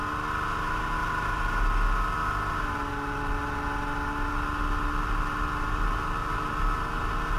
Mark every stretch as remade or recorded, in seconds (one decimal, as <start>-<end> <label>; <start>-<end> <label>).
0.0-7.4 recorded